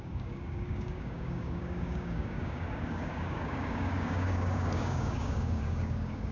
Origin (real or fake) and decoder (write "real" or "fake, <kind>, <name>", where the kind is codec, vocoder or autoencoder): fake, codec, DAC